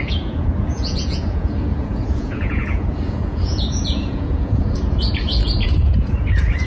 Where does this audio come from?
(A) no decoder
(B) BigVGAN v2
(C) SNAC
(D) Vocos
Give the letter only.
D